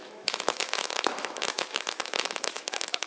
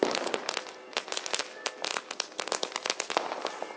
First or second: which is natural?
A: second